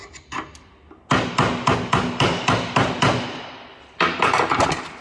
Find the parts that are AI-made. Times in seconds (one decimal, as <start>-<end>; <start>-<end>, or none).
none